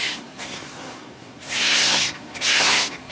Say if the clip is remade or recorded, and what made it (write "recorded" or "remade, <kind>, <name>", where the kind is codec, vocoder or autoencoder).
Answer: remade, codec, SNAC